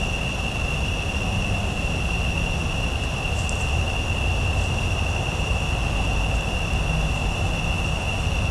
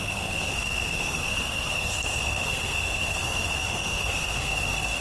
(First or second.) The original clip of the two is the first